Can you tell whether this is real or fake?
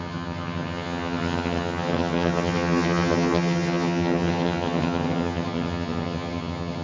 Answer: fake